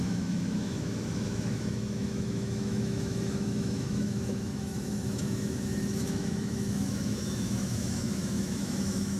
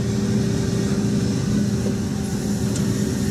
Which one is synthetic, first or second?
first